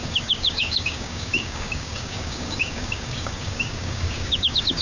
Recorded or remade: remade